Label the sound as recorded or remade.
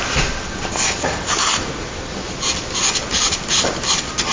recorded